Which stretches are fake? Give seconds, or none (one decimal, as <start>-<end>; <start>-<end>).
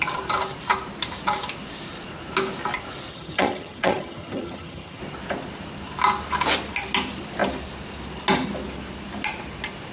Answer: 3.1-5.0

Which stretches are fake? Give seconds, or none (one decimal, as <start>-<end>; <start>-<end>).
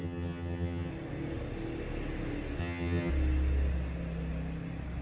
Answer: 0.0-0.9; 2.6-3.1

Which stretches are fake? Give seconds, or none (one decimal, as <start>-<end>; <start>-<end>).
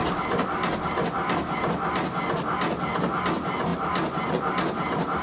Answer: none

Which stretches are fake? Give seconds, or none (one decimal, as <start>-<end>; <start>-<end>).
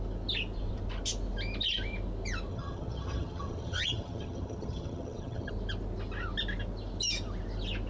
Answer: 2.5-5.5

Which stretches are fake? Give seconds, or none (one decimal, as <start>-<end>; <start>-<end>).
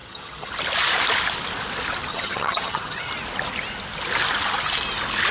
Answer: 0.0-0.5; 2.1-3.1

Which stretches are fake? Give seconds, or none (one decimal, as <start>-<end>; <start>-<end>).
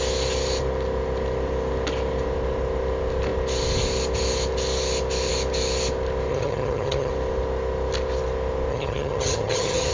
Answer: 6.3-7.1; 8.7-9.9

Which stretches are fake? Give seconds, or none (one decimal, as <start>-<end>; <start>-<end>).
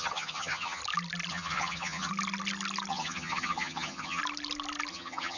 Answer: 0.0-0.8; 1.3-2.1; 2.9-4.2; 4.9-5.4